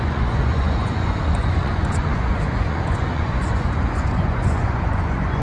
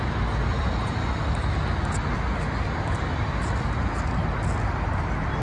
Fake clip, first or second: first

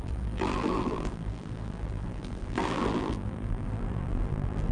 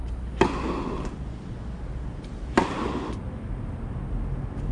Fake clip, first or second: first